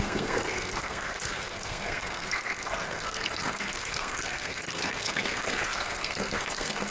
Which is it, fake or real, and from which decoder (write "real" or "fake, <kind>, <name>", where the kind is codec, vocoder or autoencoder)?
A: fake, codec, SNAC